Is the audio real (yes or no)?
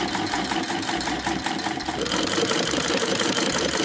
no